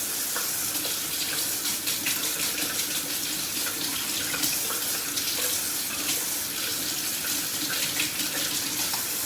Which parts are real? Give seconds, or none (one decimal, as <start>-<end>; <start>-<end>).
0.0-9.3